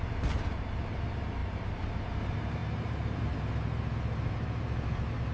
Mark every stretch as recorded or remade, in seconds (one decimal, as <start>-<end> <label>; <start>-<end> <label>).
0.0-1.4 recorded; 1.4-2.1 remade; 2.1-5.3 recorded